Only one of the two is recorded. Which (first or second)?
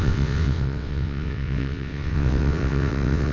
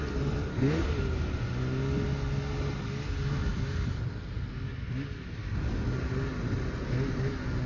second